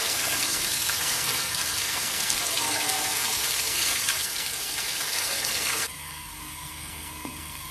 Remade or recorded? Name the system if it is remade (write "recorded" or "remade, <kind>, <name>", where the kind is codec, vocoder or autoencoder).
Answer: remade, codec, SNAC